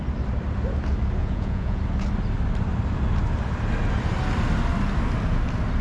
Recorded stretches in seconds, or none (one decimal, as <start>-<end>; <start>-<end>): 0.0-1.2; 1.8-5.8